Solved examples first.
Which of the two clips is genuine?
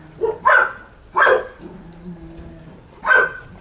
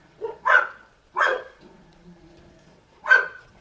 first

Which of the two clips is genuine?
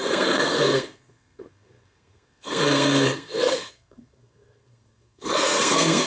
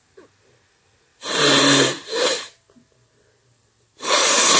second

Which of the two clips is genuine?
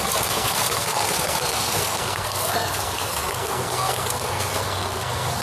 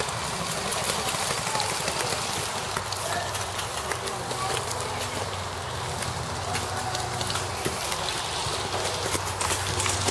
second